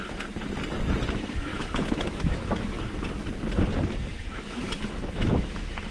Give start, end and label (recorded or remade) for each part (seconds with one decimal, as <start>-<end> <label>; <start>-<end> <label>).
0.0-1.5 recorded; 1.5-2.8 remade; 2.8-4.1 recorded; 4.1-5.9 remade